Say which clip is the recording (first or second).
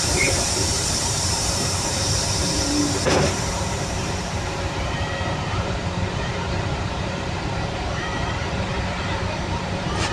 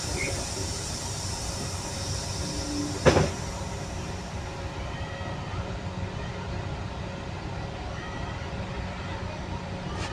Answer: second